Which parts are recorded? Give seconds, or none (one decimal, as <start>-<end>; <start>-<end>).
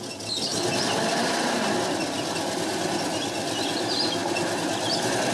0.0-5.3